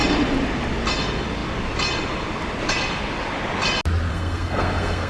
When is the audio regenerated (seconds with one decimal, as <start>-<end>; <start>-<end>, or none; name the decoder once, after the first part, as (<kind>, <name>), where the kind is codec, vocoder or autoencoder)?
4.1-5.1 (codec, SNAC)